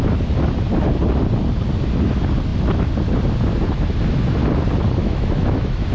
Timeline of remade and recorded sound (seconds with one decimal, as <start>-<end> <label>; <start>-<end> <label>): 0.0-5.0 recorded; 5.0-5.9 remade